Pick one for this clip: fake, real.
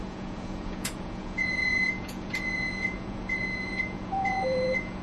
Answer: fake